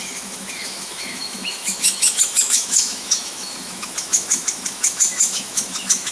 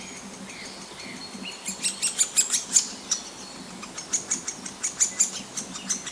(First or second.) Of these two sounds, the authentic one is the second